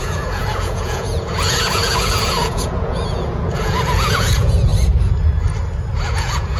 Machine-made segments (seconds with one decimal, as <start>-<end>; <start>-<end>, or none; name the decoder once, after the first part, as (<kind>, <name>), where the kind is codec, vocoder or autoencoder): 0.0-4.7 (vocoder, Vocos); 6.1-6.6